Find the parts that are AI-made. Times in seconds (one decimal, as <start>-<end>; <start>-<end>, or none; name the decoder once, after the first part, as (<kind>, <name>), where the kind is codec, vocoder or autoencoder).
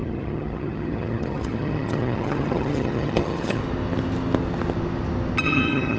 0.0-3.6 (vocoder, HiFi-GAN); 5.4-6.0